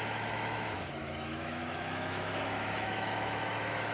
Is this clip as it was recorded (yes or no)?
no